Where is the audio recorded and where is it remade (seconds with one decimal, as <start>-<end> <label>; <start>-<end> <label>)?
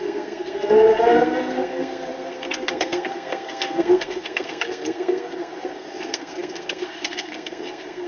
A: 0.0-8.1 remade